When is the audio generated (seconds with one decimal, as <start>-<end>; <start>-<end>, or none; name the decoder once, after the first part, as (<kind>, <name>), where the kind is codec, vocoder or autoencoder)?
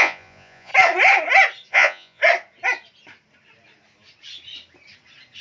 0.0-0.7 (vocoder, Vocos); 1.7-2.2